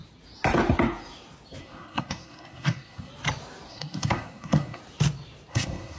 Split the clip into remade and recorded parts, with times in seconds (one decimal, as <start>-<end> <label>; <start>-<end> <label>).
0.0-1.6 recorded; 1.6-3.1 remade; 3.1-3.7 recorded; 3.7-4.8 remade; 4.8-5.5 recorded; 5.5-6.0 remade